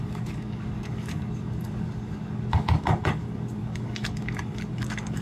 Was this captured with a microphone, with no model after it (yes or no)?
no